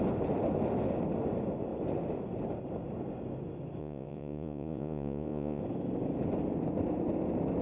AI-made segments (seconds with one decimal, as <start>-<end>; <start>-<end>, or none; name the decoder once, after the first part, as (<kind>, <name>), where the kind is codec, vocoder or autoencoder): 3.8-5.6 (vocoder, Vocos)